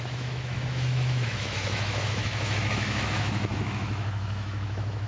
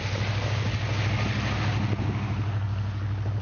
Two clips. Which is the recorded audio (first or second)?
second